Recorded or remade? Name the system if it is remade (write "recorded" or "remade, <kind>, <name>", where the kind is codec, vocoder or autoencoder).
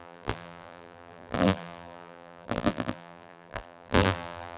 remade, vocoder, BigVGAN v2